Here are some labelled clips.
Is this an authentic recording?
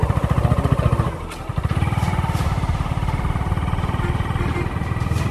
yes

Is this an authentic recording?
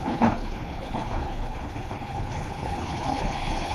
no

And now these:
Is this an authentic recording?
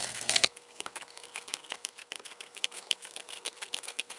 no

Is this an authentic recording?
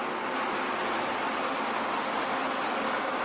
yes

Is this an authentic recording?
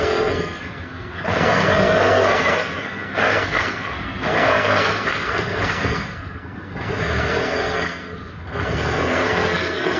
no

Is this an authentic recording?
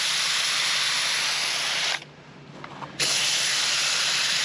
yes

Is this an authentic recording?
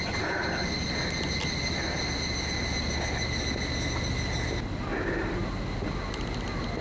yes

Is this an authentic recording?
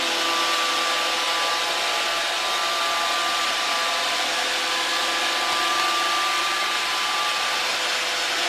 yes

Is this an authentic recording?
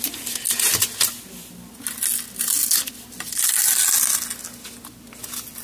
yes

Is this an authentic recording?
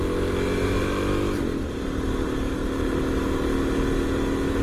yes